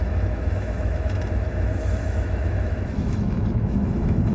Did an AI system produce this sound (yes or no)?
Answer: yes